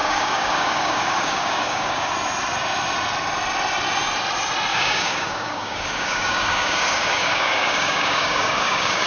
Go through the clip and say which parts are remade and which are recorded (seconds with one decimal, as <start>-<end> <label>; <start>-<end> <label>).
0.0-2.1 remade; 2.1-4.7 recorded; 4.7-9.1 remade